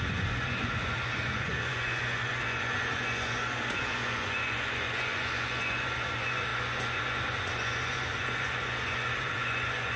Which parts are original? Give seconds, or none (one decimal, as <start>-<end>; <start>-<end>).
none